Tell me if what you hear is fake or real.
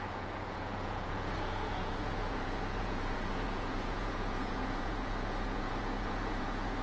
fake